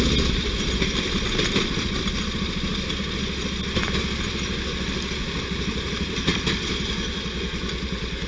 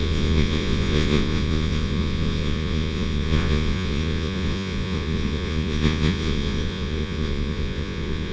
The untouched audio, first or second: first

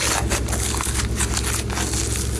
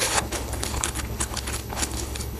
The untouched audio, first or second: first